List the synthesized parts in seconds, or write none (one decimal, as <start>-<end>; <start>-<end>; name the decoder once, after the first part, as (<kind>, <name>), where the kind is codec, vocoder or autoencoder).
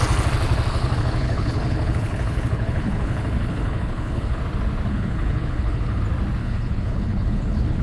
0.7-4.4 (codec, HILCodec); 4.9-6.0; 6.4-7.8